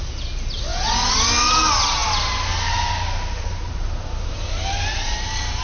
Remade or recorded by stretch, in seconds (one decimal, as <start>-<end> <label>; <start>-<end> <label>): 0.0-5.6 recorded